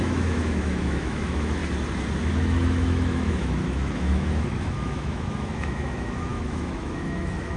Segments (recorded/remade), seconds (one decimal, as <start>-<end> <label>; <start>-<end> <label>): 0.0-1.6 remade; 1.6-2.2 recorded; 2.2-7.6 remade